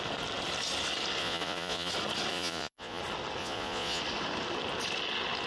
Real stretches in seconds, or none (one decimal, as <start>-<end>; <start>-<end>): 0.0-1.2; 1.9-2.3; 3.0-3.4; 4.0-5.5